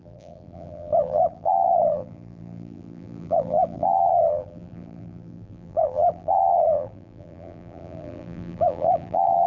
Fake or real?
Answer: fake